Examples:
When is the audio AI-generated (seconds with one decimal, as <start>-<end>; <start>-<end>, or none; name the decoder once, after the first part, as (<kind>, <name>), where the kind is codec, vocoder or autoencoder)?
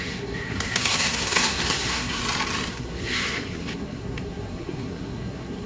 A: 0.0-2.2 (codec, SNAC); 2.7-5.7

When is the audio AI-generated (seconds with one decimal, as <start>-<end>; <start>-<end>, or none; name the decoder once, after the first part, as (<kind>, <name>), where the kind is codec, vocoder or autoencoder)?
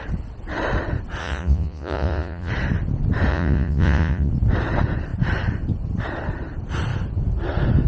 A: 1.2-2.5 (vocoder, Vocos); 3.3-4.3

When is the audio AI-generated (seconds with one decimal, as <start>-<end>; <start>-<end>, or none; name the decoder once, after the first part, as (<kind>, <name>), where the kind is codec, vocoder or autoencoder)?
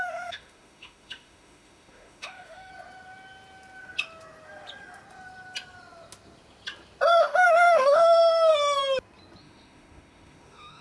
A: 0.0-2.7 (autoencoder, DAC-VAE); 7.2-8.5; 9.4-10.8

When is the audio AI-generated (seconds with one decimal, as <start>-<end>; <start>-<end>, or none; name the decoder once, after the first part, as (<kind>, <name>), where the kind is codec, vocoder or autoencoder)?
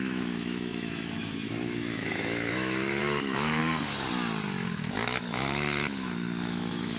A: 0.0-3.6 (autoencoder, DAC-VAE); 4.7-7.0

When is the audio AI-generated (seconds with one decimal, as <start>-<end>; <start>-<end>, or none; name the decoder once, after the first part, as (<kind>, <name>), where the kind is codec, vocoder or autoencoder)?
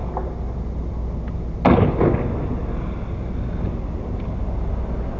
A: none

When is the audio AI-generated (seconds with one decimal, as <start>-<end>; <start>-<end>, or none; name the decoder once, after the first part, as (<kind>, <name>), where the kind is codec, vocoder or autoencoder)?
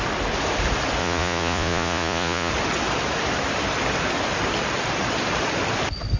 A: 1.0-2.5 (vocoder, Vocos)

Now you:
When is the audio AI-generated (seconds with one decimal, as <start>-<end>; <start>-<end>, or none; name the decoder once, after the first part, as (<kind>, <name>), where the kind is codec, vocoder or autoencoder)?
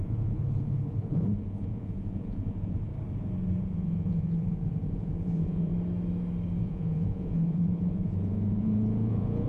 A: 0.0-2.9 (vocoder, Vocos); 3.6-5.7; 6.6-9.5